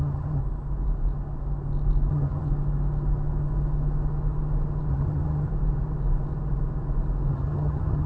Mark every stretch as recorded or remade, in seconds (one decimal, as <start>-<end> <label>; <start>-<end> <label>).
0.0-0.4 remade; 0.4-2.1 recorded; 2.1-2.5 remade; 2.5-4.9 recorded; 4.9-5.5 remade; 5.5-7.3 recorded; 7.3-8.1 remade

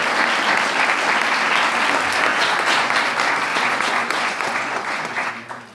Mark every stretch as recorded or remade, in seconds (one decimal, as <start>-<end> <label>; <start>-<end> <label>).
0.0-2.3 recorded; 2.3-2.9 remade; 2.9-3.5 recorded; 3.5-5.3 remade; 5.3-5.7 recorded

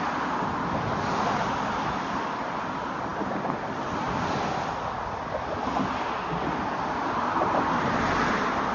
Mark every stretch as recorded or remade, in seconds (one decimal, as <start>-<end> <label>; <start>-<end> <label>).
0.0-3.1 remade; 3.1-5.8 recorded; 5.8-8.7 remade

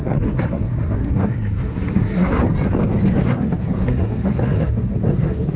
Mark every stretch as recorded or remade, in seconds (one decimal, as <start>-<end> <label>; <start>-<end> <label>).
0.0-2.4 remade; 2.4-3.2 recorded; 3.2-5.6 remade

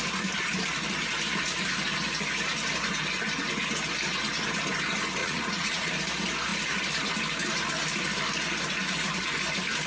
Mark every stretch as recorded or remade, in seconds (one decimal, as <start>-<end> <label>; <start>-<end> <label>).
0.0-5.2 recorded; 5.2-5.9 remade; 5.9-9.9 recorded

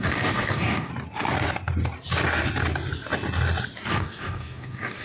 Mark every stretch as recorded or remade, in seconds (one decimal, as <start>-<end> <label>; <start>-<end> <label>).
0.0-0.9 remade; 0.9-3.9 recorded; 3.9-5.0 remade

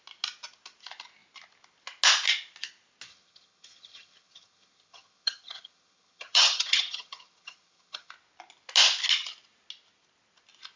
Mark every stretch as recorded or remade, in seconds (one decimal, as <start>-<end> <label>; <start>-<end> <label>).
0.0-3.1 recorded; 3.1-8.1 remade; 8.1-10.8 recorded

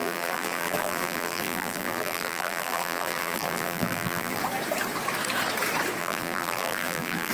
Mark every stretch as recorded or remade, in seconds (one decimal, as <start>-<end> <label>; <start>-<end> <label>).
0.0-4.4 remade; 4.4-6.0 recorded; 6.0-7.3 remade